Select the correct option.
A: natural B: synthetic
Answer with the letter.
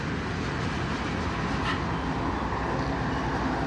A